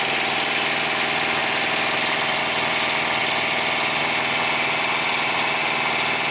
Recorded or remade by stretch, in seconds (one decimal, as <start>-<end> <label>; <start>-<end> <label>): 0.0-6.3 recorded